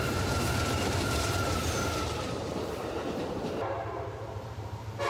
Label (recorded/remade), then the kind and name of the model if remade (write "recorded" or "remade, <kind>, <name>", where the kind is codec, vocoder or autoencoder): remade, vocoder, BigVGAN v2